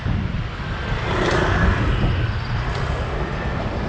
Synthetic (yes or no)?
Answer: no